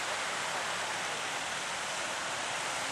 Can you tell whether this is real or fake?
real